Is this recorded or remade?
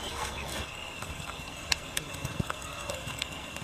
remade